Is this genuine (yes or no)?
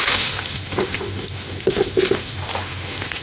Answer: no